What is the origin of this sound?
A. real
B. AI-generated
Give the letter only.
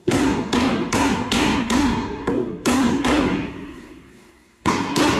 B